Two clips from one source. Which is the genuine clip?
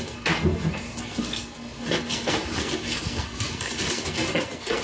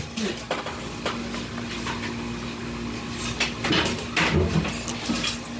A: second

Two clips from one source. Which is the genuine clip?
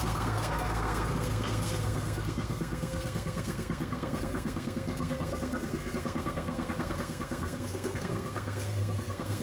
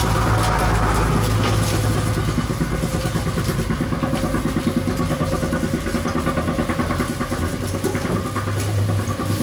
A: second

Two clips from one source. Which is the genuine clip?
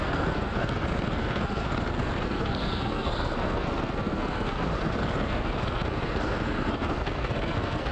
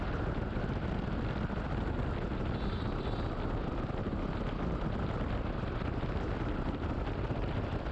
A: second